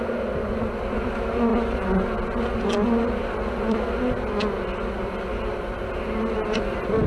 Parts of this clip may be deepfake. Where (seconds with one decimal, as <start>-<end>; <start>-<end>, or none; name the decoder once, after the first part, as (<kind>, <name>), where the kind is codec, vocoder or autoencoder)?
none